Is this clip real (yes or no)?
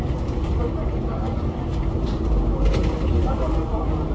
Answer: yes